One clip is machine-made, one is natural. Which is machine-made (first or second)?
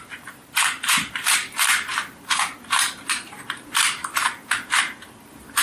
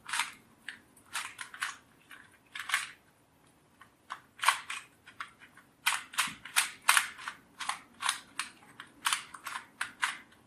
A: first